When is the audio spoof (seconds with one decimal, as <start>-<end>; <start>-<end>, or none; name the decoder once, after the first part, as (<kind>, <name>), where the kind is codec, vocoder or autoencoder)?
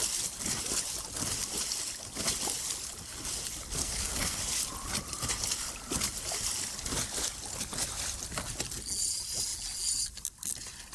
3.8-4.4 (codec, SNAC)